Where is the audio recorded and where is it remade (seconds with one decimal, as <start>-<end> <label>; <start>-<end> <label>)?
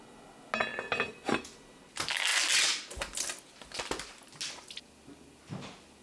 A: 0.0-0.7 recorded; 0.7-1.8 remade; 1.8-6.0 recorded